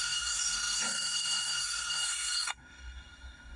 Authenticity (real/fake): fake